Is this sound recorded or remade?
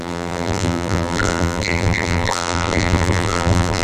remade